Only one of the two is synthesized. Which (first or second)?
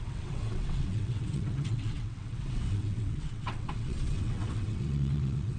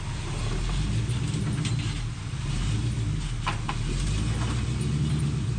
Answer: first